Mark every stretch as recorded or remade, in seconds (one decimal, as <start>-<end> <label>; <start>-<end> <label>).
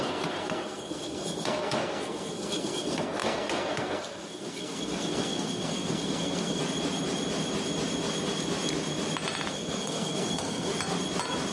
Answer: 0.0-6.6 remade; 6.6-9.5 recorded; 9.5-10.7 remade; 10.7-11.5 recorded